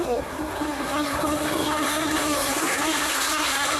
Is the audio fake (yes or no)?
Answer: yes